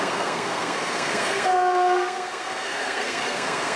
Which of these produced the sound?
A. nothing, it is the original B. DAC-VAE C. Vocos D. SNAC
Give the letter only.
D